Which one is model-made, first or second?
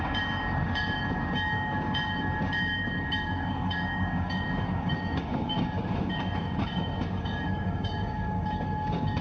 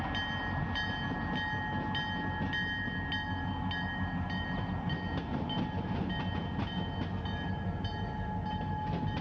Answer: first